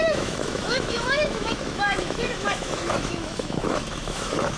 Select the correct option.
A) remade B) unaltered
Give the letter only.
A